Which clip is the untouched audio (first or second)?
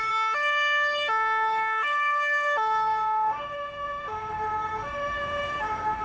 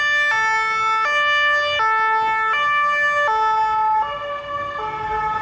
second